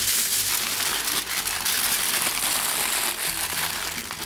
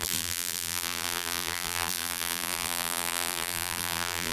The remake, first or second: second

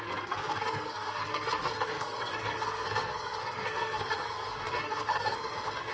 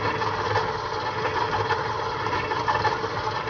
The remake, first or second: first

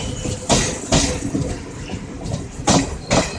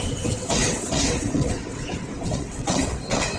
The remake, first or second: second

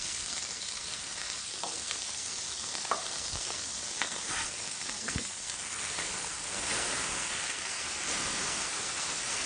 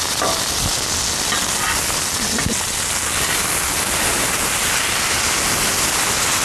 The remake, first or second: first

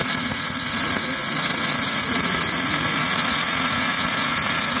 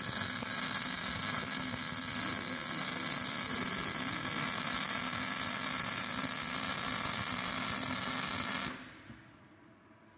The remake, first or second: first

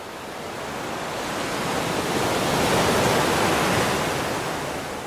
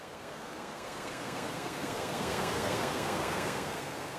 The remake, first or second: second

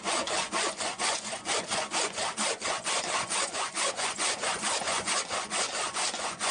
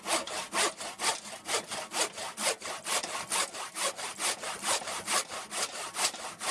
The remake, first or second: first